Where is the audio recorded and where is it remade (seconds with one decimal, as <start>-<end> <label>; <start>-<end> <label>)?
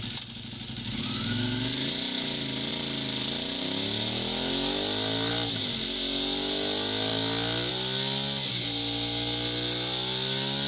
0.0-10.7 recorded